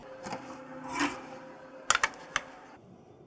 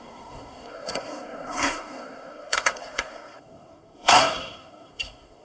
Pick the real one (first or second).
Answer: first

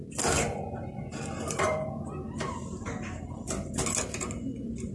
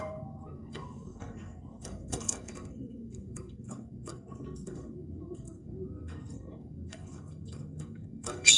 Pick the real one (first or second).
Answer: first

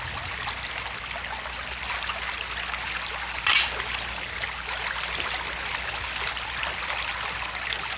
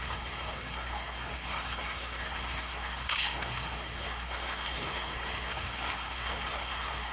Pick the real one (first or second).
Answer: first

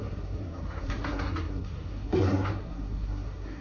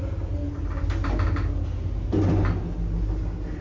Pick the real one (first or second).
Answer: second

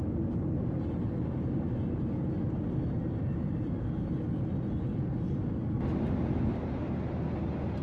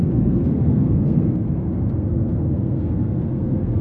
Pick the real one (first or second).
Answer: first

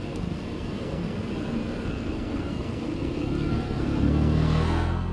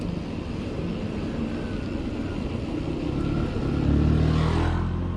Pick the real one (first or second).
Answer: second